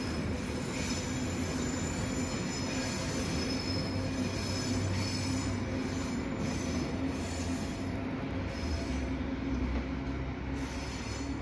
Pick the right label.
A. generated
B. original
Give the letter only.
B